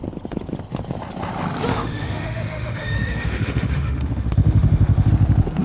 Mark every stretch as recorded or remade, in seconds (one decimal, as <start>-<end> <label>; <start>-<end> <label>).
0.0-1.7 recorded; 1.7-5.1 remade; 5.1-5.6 recorded